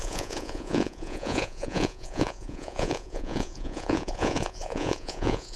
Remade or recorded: remade